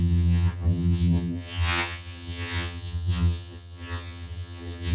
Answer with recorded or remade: remade